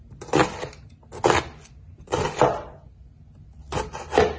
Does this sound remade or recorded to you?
recorded